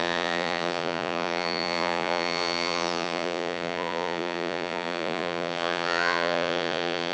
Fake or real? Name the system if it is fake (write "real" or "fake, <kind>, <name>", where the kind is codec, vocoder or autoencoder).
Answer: fake, vocoder, Vocos